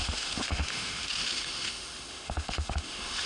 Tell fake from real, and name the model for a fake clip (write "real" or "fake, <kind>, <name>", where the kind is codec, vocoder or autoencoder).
fake, autoencoder, DAC-VAE